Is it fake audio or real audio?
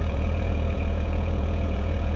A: fake